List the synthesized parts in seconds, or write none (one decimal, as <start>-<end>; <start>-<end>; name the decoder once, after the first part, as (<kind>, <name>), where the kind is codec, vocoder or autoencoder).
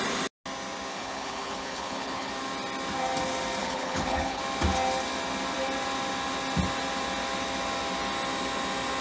0.9-2.3 (codec, HILCodec); 3.6-4.4